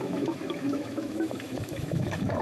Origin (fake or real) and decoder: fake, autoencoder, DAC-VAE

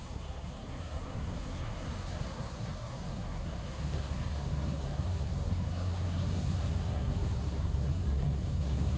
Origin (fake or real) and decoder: fake, codec, SNAC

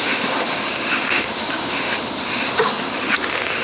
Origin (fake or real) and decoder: fake, autoencoder, DAC-VAE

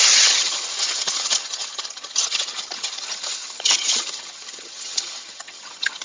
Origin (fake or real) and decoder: fake, vocoder, HiFi-GAN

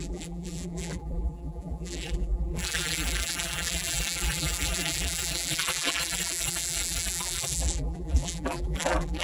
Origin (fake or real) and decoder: fake, vocoder, BigVGAN v2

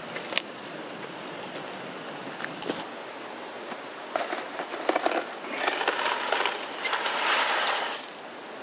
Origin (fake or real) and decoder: real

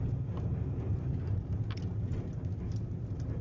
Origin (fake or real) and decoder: real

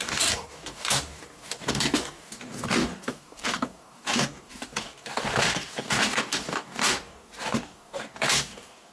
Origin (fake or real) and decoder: fake, codec, DAC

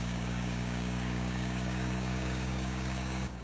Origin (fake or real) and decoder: fake, codec, DAC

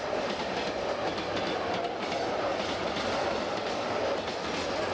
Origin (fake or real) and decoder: real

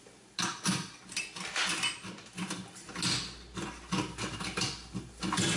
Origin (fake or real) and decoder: real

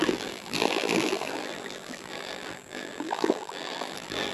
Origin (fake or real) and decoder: fake, vocoder, BigVGAN v2